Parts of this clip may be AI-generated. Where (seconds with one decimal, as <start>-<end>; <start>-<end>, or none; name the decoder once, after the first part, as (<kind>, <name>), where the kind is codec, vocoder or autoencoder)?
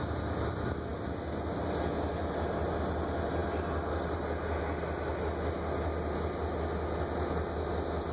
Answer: none